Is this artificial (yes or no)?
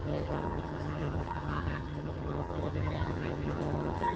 yes